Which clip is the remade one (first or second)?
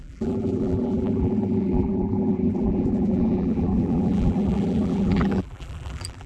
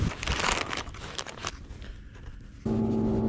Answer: first